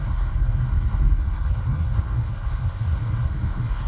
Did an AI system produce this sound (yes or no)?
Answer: yes